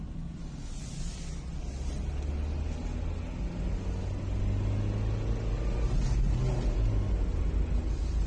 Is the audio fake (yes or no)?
no